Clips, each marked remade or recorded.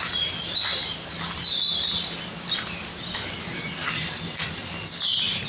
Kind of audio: recorded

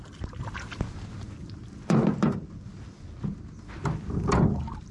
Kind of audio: recorded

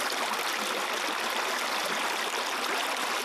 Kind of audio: recorded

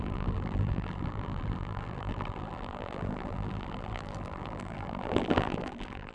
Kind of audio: remade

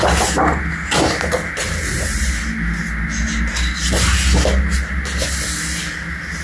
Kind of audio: recorded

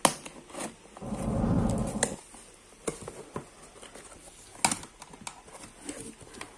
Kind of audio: recorded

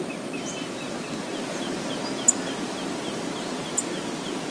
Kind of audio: recorded